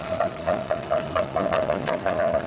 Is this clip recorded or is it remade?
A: remade